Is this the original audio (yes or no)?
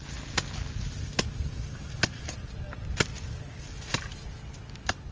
yes